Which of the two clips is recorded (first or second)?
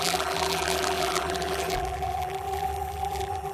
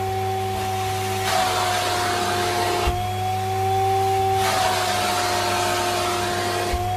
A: second